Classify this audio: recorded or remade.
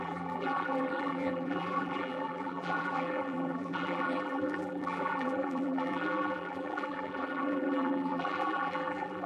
remade